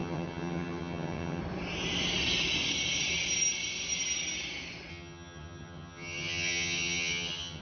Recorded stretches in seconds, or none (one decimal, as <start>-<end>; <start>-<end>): 1.4-4.9

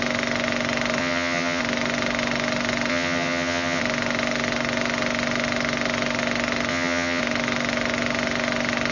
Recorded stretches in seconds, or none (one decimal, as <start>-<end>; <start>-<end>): 0.0-1.0; 1.6-2.9; 3.8-6.7; 7.2-8.9